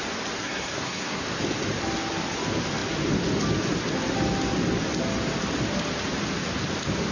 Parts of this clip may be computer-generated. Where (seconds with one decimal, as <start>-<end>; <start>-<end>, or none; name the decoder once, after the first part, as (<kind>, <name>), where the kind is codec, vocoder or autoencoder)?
0.4-1.2 (codec, SNAC)